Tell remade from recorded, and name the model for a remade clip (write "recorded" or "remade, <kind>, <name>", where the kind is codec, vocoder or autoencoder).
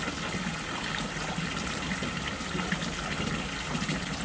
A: recorded